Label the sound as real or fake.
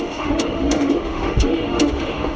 fake